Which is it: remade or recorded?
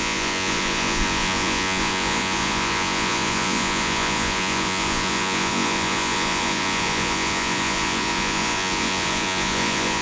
remade